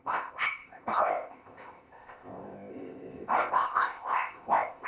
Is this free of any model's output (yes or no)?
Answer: no